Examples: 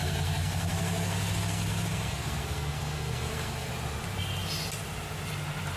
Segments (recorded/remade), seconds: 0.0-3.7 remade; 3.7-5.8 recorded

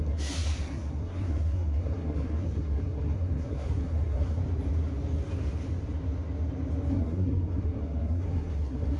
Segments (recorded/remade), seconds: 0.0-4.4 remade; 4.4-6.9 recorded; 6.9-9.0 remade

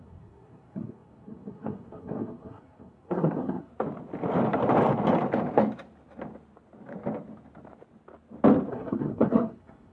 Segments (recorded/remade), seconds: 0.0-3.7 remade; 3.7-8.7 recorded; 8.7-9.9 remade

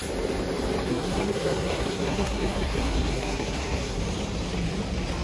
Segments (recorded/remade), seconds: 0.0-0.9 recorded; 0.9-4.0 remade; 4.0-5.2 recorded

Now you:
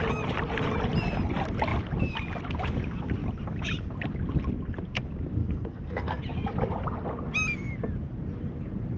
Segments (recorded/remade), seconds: 0.0-5.4 recorded; 5.4-6.2 remade; 6.2-9.0 recorded